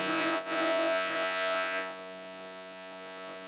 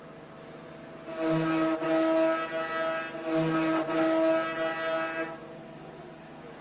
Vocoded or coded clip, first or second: first